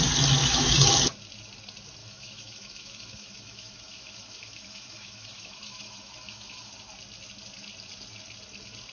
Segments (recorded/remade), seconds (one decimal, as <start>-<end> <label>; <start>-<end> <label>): 0.0-0.4 recorded; 0.4-0.9 remade; 0.9-2.0 recorded; 2.0-6.7 remade; 6.7-8.9 recorded